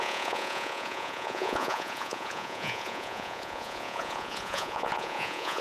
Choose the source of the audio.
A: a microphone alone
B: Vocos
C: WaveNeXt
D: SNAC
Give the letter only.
B